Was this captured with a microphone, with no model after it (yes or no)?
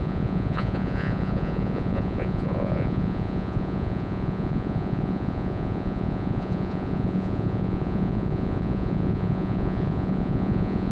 no